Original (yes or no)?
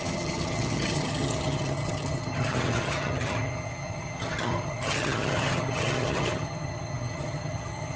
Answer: no